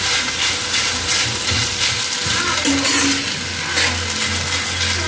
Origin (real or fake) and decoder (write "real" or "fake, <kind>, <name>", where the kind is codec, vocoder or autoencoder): real